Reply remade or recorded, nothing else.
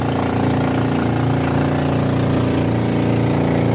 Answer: recorded